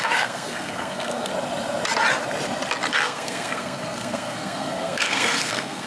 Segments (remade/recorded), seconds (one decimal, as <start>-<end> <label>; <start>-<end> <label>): 0.0-1.3 remade; 1.3-2.9 recorded; 2.9-5.9 remade